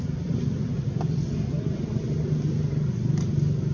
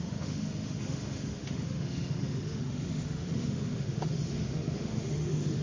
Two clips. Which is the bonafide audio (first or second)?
first